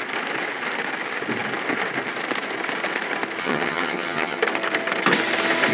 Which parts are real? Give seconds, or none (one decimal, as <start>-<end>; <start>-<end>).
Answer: 0.0-3.4; 4.4-5.7